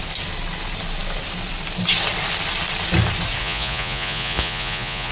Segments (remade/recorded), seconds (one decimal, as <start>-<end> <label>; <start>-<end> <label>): 0.0-3.4 recorded; 3.4-5.1 remade